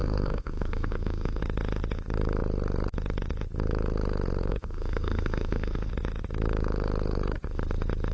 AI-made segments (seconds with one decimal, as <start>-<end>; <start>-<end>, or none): 0.0-1.4; 4.5-5.9